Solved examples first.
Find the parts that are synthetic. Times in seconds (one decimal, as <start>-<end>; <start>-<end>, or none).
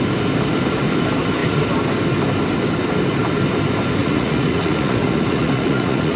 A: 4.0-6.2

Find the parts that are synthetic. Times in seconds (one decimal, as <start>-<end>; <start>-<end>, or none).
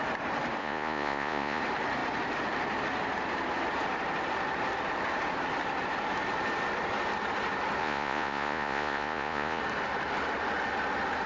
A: 0.6-1.6; 7.8-9.6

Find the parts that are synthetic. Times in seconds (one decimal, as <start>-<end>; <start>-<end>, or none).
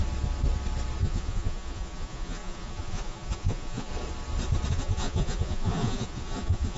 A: 1.0-3.9; 4.7-6.8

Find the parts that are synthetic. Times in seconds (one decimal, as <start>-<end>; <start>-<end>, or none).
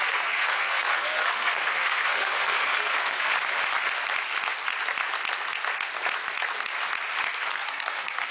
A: 0.0-3.3; 7.5-8.3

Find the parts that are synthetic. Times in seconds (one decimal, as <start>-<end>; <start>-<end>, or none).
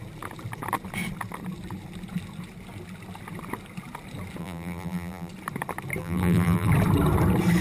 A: 4.4-5.3; 6.0-6.7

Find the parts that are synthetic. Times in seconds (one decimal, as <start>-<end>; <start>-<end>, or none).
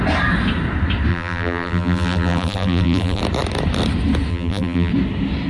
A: 1.1-3.2; 4.3-4.9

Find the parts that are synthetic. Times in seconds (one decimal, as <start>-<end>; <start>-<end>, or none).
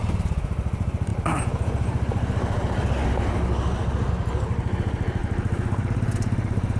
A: 5.2-6.8